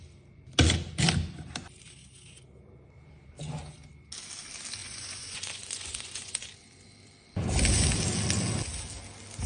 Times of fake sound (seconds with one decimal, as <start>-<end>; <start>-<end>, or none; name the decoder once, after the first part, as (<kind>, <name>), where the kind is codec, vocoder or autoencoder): 4.8-6.5 (vocoder, Vocos)